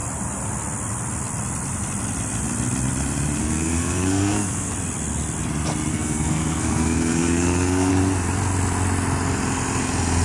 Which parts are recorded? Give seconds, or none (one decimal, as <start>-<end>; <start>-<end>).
0.0-3.4; 4.7-5.9; 7.9-10.2